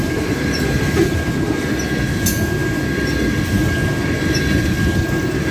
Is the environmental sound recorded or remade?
recorded